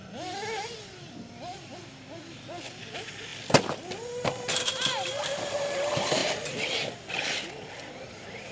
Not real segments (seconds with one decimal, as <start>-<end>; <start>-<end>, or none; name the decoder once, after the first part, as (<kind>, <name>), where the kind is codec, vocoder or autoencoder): none